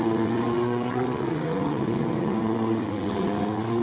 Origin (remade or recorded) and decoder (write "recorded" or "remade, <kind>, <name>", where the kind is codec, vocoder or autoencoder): remade, vocoder, WaveNeXt